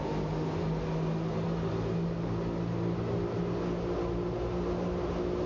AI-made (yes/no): no